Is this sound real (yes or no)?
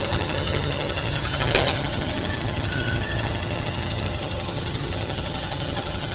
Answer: no